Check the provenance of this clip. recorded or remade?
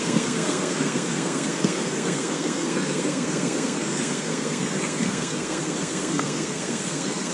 remade